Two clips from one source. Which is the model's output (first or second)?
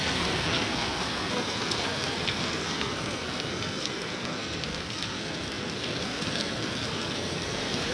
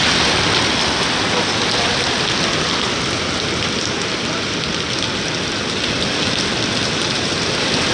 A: first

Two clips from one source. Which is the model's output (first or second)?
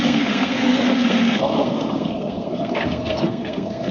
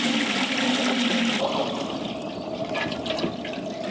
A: first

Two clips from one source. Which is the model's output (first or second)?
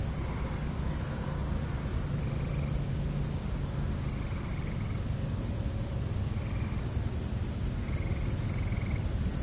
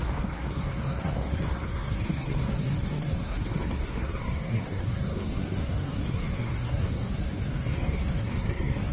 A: second